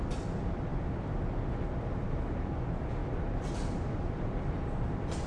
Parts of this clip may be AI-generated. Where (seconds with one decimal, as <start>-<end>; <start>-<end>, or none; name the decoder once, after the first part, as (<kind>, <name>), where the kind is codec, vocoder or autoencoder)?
none